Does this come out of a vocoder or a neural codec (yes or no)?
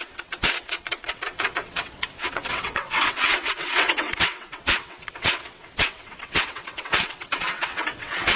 yes